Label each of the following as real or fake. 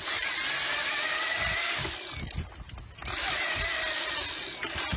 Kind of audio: real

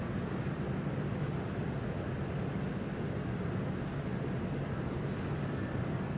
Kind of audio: real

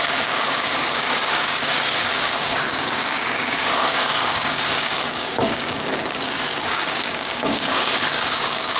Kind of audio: fake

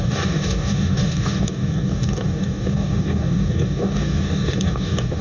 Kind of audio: fake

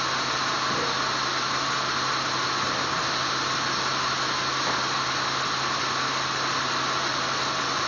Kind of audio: real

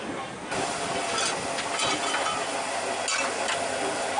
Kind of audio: real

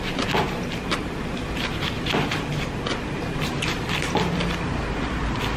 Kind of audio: real